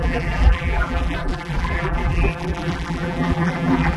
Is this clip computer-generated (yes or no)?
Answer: yes